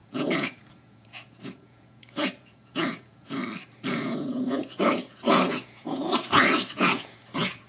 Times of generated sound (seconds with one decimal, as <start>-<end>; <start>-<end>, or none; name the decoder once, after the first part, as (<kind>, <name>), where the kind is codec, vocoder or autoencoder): 0.0-3.4 (vocoder, Vocos); 3.9-7.7